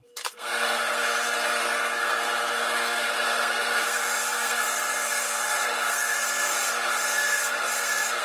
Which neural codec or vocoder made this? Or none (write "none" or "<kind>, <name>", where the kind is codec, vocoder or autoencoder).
codec, SNAC